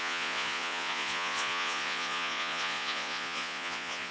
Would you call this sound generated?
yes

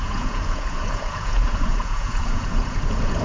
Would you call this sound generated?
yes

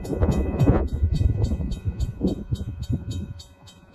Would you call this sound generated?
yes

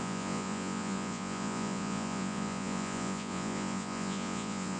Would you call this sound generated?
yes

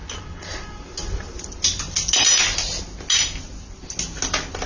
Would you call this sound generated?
no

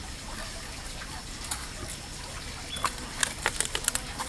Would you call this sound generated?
no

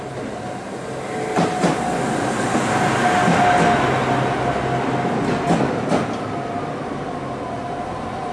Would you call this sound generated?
no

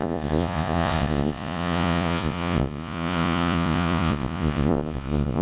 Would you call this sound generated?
yes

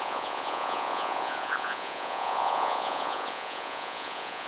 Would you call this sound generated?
yes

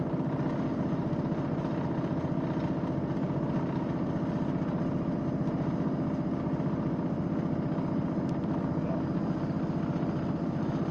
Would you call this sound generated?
no